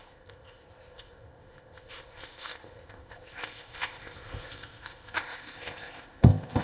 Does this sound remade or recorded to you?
remade